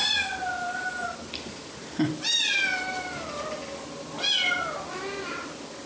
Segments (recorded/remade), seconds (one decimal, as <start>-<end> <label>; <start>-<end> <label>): 0.0-5.9 recorded